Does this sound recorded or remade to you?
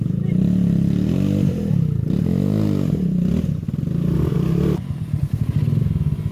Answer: recorded